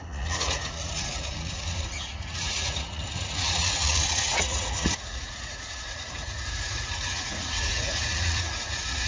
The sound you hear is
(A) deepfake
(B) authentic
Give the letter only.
A